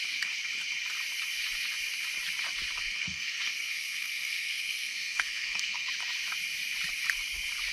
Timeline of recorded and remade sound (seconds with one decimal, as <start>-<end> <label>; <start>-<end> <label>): 0.0-2.8 recorded; 2.8-5.9 remade; 5.9-7.7 recorded